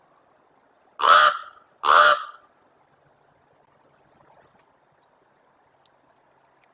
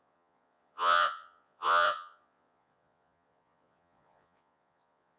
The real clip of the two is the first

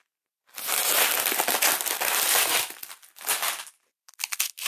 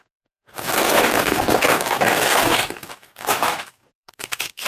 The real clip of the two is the first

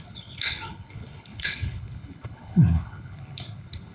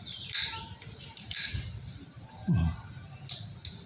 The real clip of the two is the second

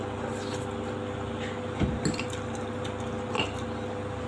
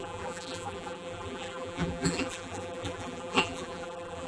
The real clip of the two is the first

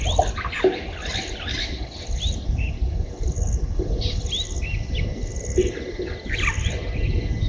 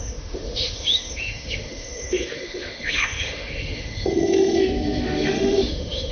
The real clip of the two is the first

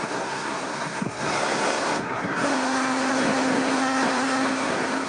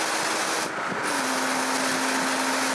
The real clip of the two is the second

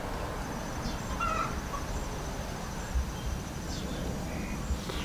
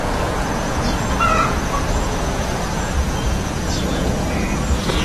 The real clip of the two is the first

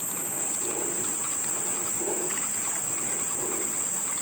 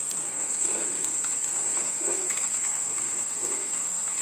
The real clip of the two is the first